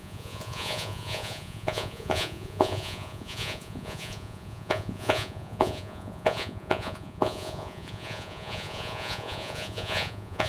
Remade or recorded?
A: remade